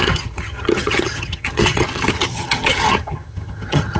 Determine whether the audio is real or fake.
fake